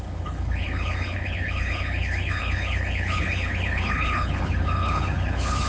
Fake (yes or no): yes